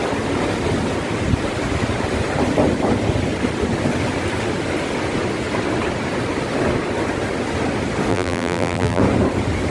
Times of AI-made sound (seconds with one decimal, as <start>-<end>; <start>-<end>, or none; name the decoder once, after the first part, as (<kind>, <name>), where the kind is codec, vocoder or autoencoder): 8.1-9.0 (vocoder, BigVGAN v2)